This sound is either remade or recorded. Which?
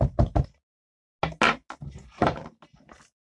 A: recorded